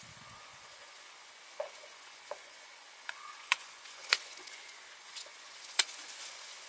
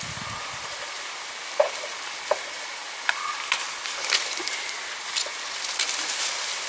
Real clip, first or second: second